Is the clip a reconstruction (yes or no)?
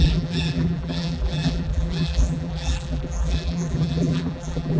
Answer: yes